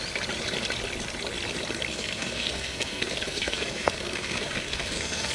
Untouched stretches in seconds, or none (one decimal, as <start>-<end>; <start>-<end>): 0.0-1.9